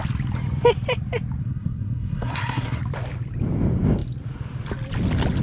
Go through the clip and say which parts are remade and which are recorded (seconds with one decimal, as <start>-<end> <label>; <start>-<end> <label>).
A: 0.0-1.4 recorded; 1.4-2.8 remade; 2.8-5.4 recorded